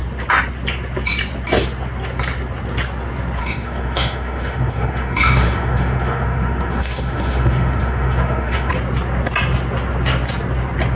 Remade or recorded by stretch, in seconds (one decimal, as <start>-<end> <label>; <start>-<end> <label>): 0.0-3.4 recorded; 3.4-8.7 remade; 8.7-11.0 recorded